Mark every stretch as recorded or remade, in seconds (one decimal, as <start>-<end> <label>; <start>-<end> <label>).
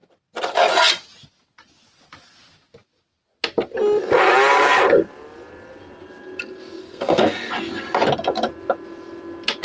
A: 0.0-6.8 recorded; 6.8-7.5 remade; 7.5-9.6 recorded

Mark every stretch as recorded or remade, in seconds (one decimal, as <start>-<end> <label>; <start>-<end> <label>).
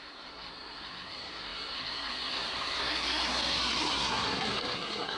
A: 0.0-5.2 remade